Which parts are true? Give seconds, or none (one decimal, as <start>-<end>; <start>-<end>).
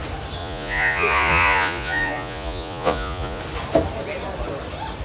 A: 0.0-0.4; 3.4-5.0